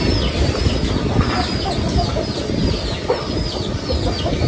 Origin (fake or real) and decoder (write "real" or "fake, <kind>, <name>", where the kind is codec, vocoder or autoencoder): real